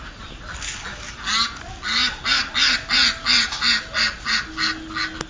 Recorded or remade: recorded